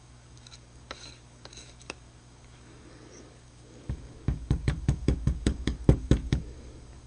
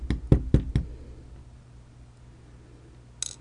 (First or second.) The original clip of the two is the second